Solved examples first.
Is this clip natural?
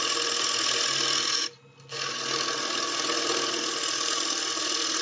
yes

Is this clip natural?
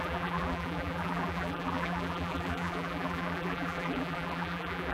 no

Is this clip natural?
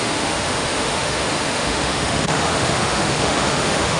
no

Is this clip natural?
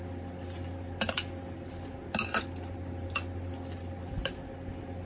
yes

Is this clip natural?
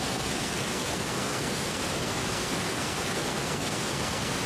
no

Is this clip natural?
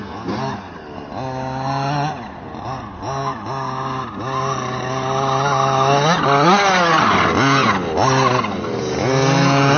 yes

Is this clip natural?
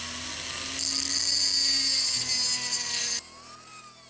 yes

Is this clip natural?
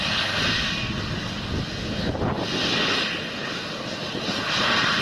yes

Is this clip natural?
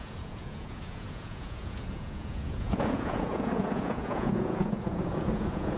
no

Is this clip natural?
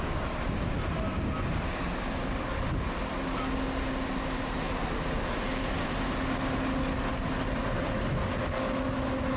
yes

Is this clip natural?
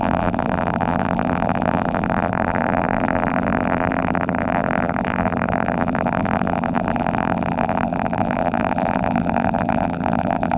no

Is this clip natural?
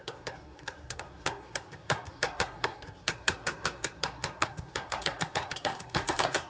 no